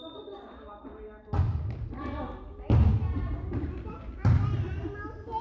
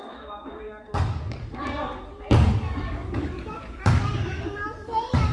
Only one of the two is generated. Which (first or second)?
second